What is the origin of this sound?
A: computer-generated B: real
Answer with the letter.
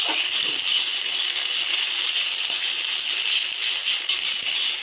B